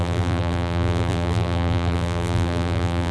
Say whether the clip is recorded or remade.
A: remade